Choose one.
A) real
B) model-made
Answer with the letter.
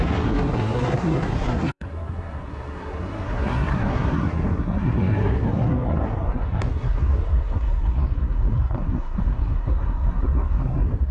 B